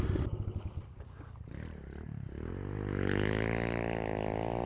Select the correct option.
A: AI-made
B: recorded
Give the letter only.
B